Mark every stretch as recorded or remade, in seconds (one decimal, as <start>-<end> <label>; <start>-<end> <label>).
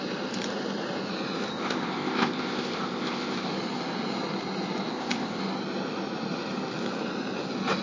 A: 0.0-1.5 recorded; 1.5-3.5 remade; 3.5-4.9 recorded; 4.9-5.4 remade; 5.4-7.8 recorded